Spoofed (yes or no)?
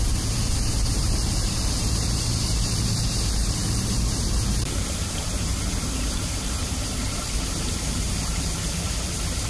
yes